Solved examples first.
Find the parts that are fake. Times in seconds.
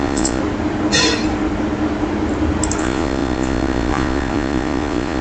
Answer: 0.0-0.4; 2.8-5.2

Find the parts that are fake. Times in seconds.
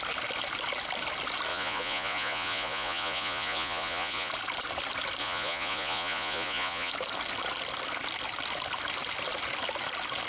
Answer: 1.5-4.3; 5.2-6.9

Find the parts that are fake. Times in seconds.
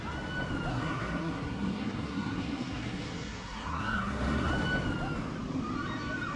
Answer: 0.7-4.5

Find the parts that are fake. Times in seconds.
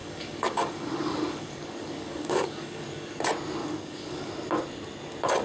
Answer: 0.0-3.2; 3.6-4.3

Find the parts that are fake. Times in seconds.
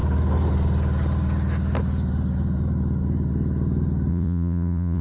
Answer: 4.1-5.0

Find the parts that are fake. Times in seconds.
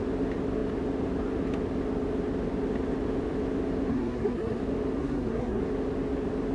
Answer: 3.9-4.6; 5.0-5.6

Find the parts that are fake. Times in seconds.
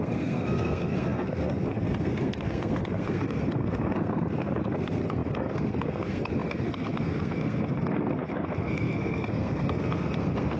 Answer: 0.0-10.6